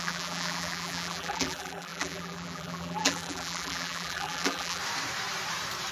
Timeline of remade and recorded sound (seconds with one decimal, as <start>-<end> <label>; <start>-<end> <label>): 0.0-4.8 remade; 4.8-5.9 recorded